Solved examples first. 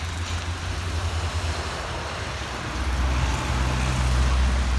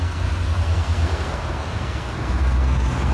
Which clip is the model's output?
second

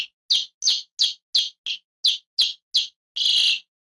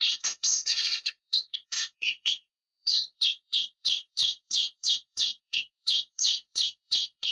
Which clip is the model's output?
second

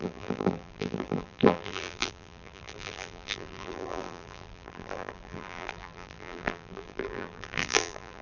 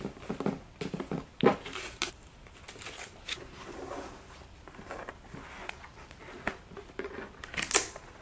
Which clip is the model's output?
first